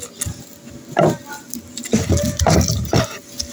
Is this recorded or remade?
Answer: recorded